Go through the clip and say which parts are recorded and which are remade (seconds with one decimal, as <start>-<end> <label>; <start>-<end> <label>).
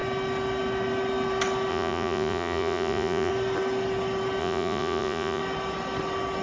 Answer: 0.0-1.7 recorded; 1.7-3.3 remade; 3.3-4.4 recorded; 4.4-5.4 remade; 5.4-6.4 recorded